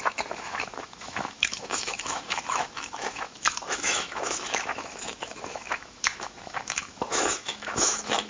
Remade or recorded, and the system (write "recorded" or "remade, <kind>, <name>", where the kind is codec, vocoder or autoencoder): remade, autoencoder, DAC-VAE